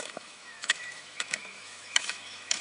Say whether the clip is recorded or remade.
remade